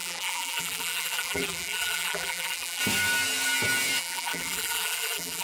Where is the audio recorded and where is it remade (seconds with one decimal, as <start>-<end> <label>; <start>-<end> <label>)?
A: 0.0-2.8 remade; 2.8-4.0 recorded; 4.0-5.4 remade

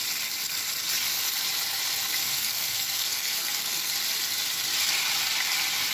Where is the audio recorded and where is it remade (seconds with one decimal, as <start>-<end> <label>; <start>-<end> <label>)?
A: 0.0-2.2 recorded; 2.2-3.9 remade; 3.9-5.9 recorded

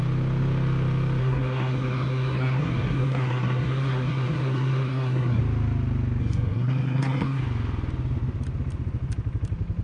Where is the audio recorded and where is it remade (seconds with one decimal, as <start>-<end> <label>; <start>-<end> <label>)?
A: 0.0-1.2 recorded; 1.2-5.4 remade; 5.4-6.2 recorded; 6.2-7.4 remade; 7.4-9.8 recorded

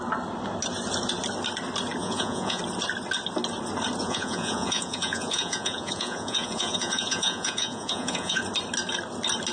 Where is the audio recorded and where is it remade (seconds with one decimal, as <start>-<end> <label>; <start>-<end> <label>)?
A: 0.0-2.0 recorded; 2.0-2.6 remade; 2.6-4.0 recorded; 4.0-8.4 remade; 8.4-9.5 recorded